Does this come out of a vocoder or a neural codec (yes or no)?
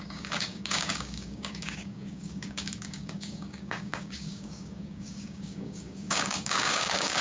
yes